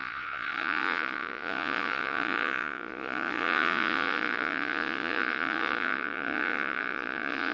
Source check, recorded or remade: remade